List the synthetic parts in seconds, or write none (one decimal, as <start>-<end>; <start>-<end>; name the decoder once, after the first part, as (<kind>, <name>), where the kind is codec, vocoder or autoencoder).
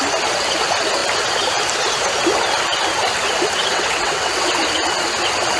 3.7-4.5 (vocoder, WaveNeXt)